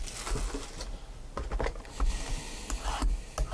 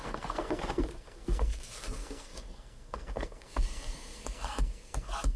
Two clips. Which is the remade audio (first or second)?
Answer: second